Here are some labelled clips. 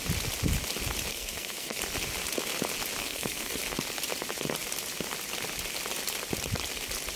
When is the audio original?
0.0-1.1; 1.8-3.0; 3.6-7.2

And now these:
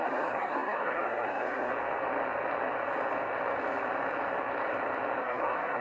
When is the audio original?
1.7-5.2

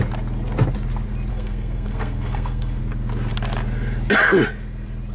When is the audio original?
0.0-1.3; 2.8-5.1

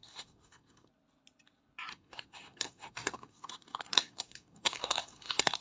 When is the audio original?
0.9-1.9

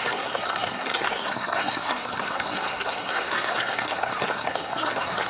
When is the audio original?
none

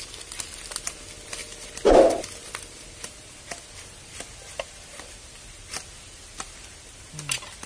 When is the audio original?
0.0-7.7

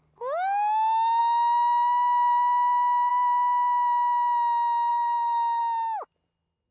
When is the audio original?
0.0-4.9; 5.6-6.7

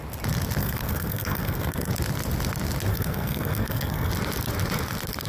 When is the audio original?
0.0-0.6; 1.9-2.9; 4.1-5.3